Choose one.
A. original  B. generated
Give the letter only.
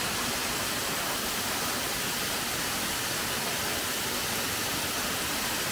A